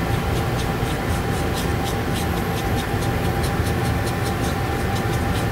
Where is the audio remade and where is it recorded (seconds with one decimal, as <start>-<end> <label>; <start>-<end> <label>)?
0.0-5.5 recorded